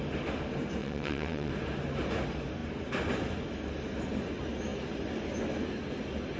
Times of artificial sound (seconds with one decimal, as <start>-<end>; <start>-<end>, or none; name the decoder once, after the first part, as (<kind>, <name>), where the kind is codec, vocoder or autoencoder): 0.8-1.5 (vocoder, WaveNeXt)